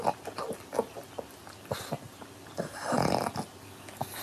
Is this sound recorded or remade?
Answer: recorded